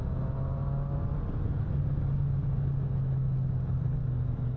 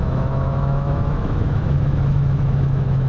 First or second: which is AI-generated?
second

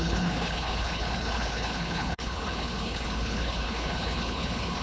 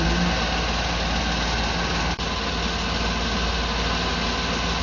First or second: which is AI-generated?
first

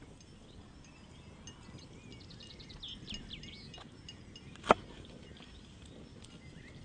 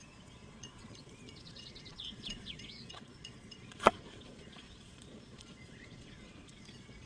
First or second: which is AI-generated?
second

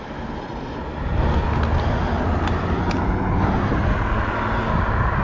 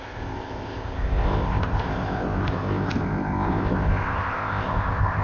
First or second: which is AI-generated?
second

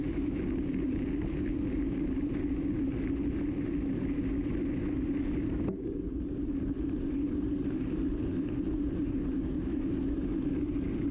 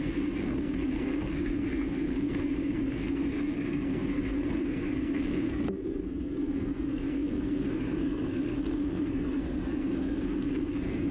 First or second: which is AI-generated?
second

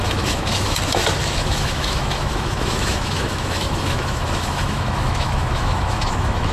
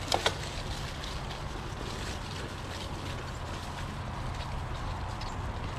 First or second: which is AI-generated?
first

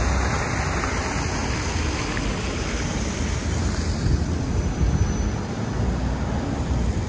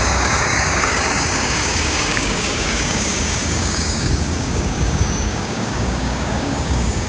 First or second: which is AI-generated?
second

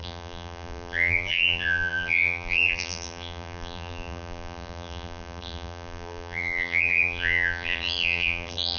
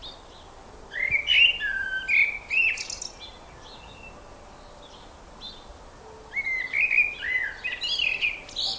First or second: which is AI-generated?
first